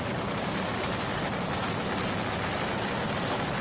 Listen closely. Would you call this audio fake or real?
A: real